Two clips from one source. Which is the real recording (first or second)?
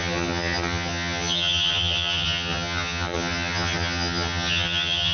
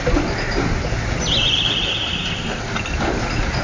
second